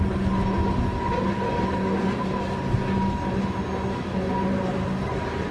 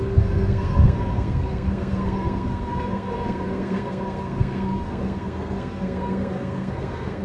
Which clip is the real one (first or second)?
first